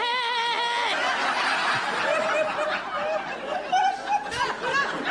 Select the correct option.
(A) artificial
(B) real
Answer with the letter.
B